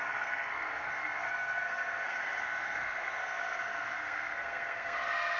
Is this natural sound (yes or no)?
no